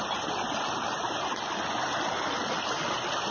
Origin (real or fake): real